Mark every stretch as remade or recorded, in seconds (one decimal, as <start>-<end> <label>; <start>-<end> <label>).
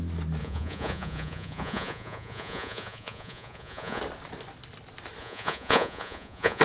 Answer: 0.0-0.4 recorded; 0.4-4.0 remade; 4.0-5.2 recorded; 5.2-6.6 remade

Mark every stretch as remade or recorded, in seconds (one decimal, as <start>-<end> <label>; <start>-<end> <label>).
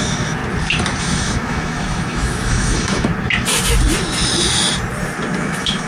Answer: 0.0-0.4 remade; 0.4-1.0 recorded; 1.0-3.1 remade; 3.1-5.4 recorded; 5.4-5.9 remade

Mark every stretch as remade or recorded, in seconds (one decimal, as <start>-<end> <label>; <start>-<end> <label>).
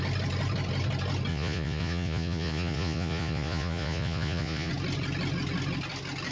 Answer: 0.0-1.3 recorded; 1.3-4.7 remade; 4.7-6.3 recorded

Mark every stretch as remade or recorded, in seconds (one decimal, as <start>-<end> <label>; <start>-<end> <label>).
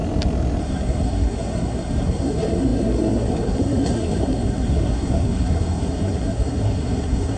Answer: 0.0-0.6 recorded; 0.6-7.4 remade